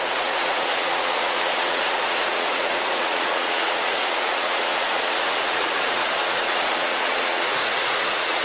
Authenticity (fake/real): fake